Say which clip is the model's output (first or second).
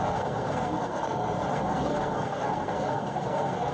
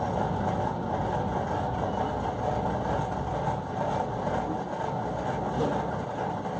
first